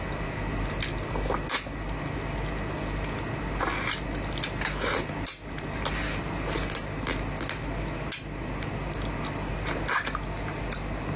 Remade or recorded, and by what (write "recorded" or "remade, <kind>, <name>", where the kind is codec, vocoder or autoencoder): recorded